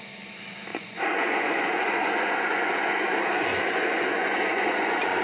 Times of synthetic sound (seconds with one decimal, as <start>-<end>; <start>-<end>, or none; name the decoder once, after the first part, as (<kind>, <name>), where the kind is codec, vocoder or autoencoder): 0.7-3.1 (vocoder, Vocos); 3.5-5.2